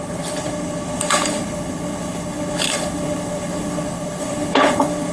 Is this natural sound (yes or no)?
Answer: no